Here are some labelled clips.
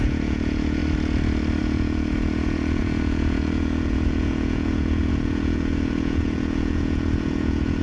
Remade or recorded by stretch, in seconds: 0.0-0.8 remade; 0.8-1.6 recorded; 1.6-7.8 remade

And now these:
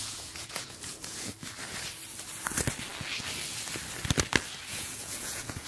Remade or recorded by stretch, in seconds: 0.0-1.3 remade; 1.3-4.7 recorded; 4.7-5.7 remade

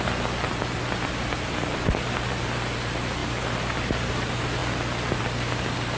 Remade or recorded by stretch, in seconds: 0.0-6.0 recorded

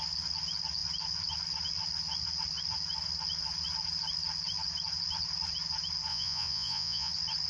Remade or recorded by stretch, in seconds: 0.0-6.1 recorded; 6.1-7.1 remade; 7.1-7.5 recorded

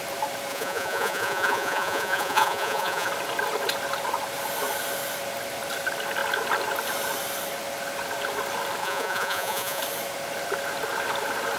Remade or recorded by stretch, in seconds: 0.0-0.5 recorded; 0.5-3.1 remade; 3.1-8.8 recorded; 8.8-9.8 remade; 9.8-11.6 recorded

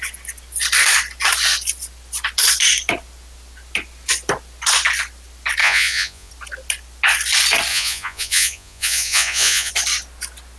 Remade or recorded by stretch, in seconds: 0.0-5.6 recorded; 5.6-6.3 remade; 6.3-7.7 recorded; 7.7-9.7 remade; 9.7-10.6 recorded